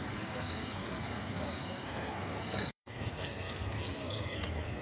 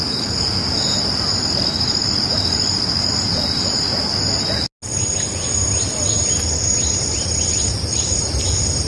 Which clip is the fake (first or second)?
first